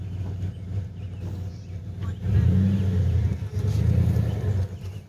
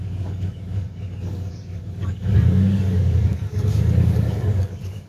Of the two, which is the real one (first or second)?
first